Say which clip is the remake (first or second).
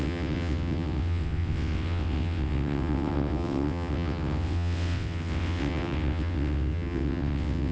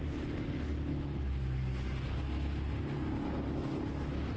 first